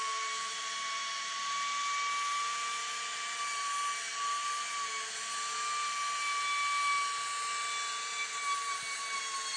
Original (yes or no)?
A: yes